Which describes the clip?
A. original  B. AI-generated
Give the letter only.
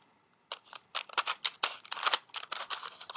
A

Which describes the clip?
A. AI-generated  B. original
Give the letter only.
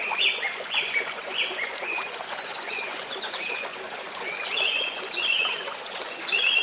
A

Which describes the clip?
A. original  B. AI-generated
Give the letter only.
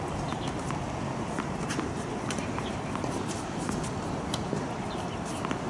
A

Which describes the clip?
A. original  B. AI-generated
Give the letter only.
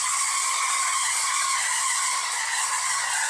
A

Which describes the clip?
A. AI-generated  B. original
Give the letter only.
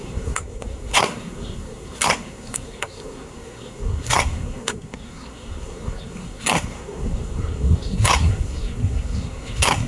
A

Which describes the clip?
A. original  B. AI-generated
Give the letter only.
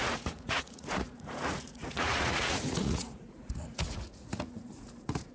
B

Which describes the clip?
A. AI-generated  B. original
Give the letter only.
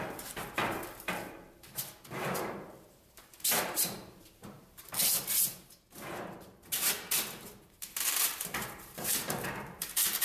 A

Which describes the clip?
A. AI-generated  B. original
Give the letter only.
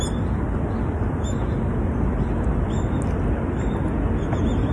B